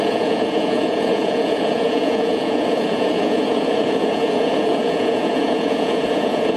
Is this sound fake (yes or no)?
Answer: yes